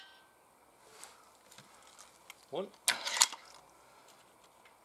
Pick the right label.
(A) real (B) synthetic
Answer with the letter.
A